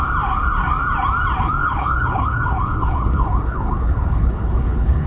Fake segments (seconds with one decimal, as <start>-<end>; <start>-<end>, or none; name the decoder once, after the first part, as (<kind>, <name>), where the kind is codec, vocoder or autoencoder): 1.6-5.1 (codec, HILCodec)